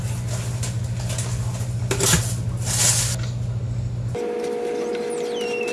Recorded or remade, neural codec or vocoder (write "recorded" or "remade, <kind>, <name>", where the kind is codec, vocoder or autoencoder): recorded